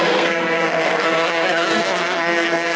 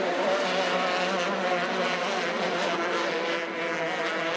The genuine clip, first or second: second